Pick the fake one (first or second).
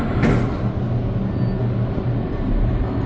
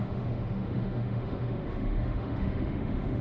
second